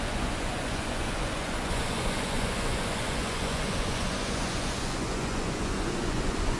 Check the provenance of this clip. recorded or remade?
remade